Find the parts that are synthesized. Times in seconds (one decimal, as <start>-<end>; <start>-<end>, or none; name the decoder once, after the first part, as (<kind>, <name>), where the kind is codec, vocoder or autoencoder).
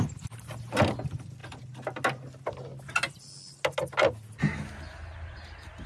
none